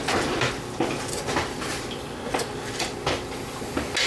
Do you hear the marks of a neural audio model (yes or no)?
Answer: no